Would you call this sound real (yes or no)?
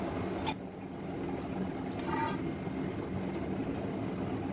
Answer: yes